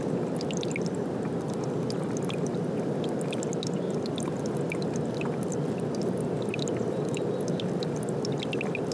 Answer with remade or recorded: recorded